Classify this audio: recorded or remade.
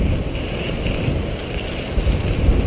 recorded